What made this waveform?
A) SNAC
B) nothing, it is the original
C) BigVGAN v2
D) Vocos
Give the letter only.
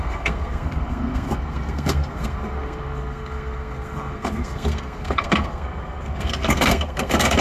A